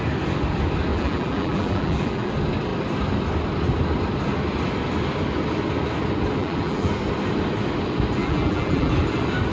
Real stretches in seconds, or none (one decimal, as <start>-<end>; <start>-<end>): 0.0-0.9; 2.3-6.4; 6.9-8.2; 8.9-9.5